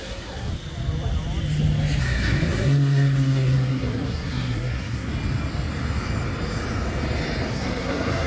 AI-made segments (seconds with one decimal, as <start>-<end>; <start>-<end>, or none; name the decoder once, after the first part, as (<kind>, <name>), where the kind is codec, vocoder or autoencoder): 0.0-0.5 (codec, SNAC); 2.0-5.1; 7.5-8.3